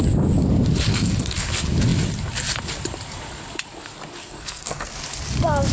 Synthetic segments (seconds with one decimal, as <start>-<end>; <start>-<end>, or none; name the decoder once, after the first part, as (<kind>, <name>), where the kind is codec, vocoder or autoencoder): 0.9-1.5 (codec, SNAC); 4.2-4.9